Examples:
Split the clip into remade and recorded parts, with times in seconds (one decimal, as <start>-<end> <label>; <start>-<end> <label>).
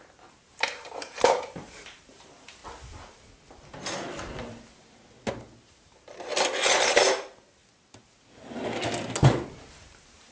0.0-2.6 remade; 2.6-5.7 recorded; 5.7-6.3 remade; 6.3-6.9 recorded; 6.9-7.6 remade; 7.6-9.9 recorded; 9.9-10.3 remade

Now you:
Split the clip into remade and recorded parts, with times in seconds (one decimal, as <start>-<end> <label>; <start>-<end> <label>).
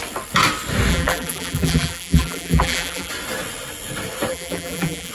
0.0-0.9 recorded; 0.9-3.1 remade; 3.1-4.3 recorded; 4.3-5.1 remade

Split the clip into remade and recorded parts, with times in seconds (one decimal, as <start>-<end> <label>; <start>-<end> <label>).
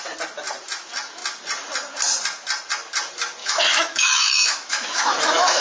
0.0-3.4 recorded; 3.4-5.6 remade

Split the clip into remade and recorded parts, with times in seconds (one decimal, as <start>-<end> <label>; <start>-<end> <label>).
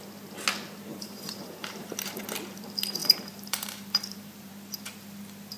0.0-0.9 recorded; 0.9-2.2 remade; 2.2-3.0 recorded; 3.0-4.5 remade; 4.5-5.6 recorded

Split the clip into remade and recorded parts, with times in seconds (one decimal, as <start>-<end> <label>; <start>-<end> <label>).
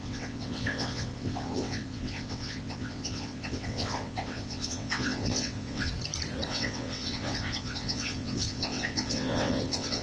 0.0-5.9 remade; 5.9-6.5 recorded; 6.5-10.0 remade